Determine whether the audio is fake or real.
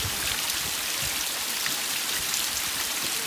real